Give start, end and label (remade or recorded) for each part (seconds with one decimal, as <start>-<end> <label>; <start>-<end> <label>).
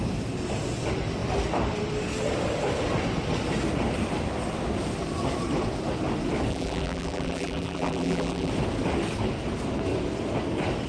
0.0-6.5 recorded; 6.5-8.5 remade; 8.5-10.9 recorded